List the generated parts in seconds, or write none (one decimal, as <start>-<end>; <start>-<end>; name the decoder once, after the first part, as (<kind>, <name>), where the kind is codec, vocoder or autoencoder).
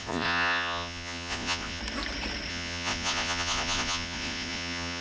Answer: 0.0-1.8 (vocoder, Vocos); 2.5-5.0